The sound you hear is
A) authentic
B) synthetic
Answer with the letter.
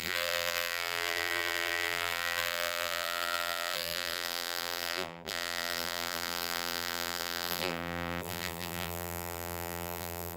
B